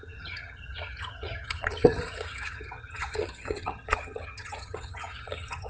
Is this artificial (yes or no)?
yes